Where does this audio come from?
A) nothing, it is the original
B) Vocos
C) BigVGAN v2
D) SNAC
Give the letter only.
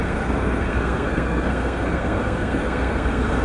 D